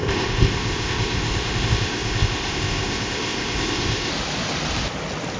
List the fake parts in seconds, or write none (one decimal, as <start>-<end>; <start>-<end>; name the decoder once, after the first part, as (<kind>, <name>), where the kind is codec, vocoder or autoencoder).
0.0-4.1 (codec, ZipCodec)

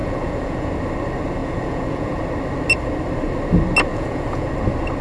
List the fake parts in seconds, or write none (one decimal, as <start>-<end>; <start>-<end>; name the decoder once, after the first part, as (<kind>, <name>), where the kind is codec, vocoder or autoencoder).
0.0-0.7 (vocoder, Vocos); 1.4-2.2; 3.9-4.5

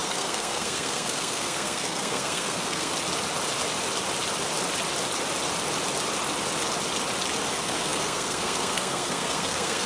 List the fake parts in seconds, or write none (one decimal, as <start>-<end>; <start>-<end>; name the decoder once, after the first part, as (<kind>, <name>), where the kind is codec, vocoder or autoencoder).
0.0-2.9 (codec, SNAC); 7.5-9.9

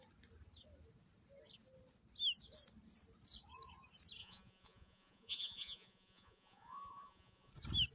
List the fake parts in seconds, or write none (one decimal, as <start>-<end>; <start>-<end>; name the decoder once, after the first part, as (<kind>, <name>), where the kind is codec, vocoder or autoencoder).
4.2-7.5 (vocoder, Vocos)

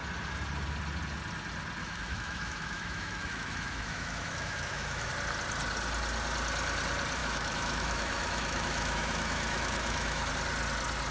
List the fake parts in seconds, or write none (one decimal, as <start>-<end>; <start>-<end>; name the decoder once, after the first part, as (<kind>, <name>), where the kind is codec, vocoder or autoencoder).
1.8-5.1 (autoencoder, DAC-VAE); 7.2-10.3

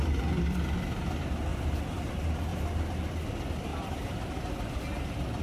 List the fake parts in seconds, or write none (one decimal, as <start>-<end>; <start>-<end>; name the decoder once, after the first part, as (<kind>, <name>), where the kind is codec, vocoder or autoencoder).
1.5-2.1 (vocoder, BigVGAN v2); 2.5-3.1; 3.7-4.8

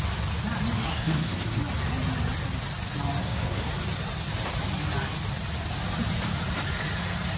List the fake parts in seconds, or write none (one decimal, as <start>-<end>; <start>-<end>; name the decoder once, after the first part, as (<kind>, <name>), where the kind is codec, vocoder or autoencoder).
0.9-1.6 (codec, SNAC); 3.2-3.7